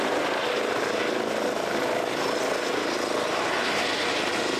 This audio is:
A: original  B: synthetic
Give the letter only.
A